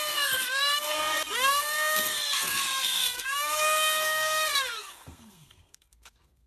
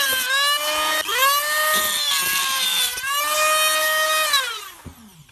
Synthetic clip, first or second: first